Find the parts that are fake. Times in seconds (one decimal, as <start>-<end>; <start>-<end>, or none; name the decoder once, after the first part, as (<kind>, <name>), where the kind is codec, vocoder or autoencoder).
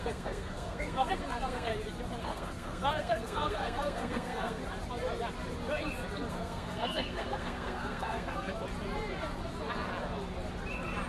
0.0-1.7 (codec, SNAC); 2.2-4.6; 6.3-8.5